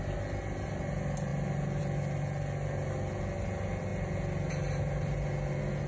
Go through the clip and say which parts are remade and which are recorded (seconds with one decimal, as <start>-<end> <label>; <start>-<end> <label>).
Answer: 0.0-5.9 recorded